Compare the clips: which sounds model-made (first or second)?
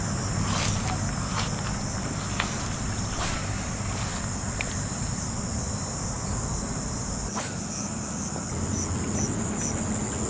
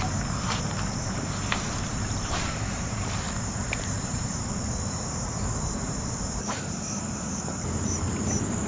second